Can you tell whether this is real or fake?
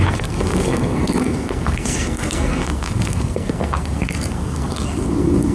fake